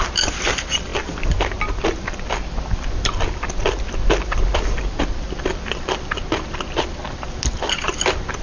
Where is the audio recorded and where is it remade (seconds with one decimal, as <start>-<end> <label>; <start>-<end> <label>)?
0.0-0.9 remade; 0.9-1.8 recorded; 1.8-8.4 remade